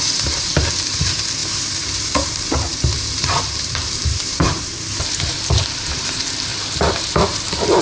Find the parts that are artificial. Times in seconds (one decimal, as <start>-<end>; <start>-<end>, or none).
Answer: 0.0-6.5; 7.2-7.8